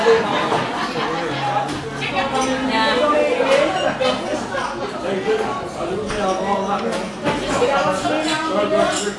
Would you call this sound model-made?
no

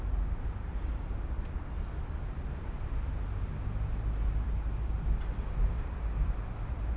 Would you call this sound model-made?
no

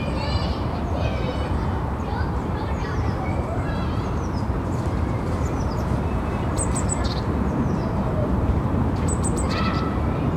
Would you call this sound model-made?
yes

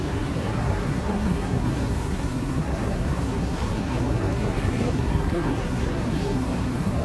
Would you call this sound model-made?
yes